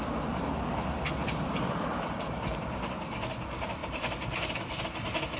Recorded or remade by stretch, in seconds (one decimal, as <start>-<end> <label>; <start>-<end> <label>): 0.0-1.2 recorded; 1.2-3.0 remade; 3.0-3.8 recorded; 3.8-4.8 remade; 4.8-5.4 recorded